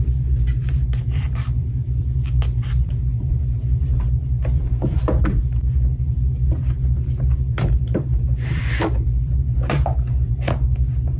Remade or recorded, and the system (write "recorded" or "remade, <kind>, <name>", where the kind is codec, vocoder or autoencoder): remade, vocoder, BigVGAN v2